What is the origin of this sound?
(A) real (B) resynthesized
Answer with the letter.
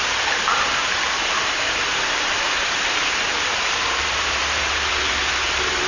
B